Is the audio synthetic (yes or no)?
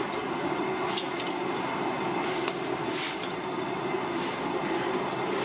no